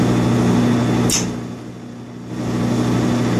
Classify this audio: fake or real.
real